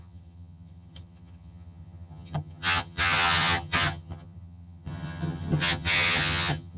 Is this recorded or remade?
remade